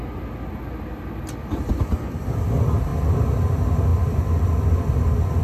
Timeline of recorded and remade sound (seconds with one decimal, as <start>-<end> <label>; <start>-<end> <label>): 0.0-5.4 recorded